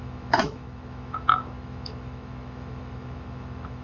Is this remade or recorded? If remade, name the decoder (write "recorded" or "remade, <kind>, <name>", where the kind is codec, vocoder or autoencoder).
remade, autoencoder, DAC-VAE